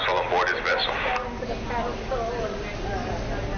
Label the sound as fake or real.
real